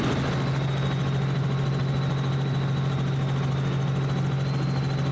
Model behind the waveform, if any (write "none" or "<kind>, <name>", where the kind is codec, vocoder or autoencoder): none